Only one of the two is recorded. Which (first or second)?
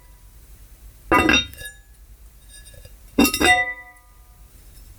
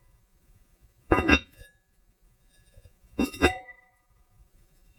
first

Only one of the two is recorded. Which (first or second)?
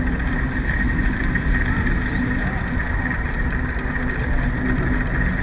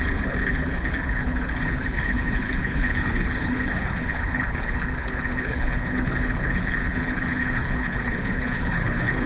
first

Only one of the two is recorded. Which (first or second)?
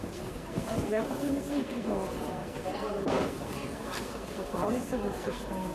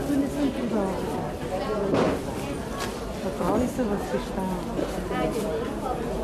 second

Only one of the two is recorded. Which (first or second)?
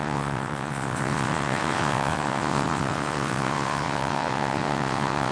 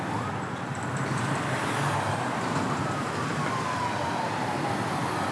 second